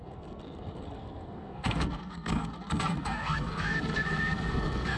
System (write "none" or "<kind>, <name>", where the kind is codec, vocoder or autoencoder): codec, SNAC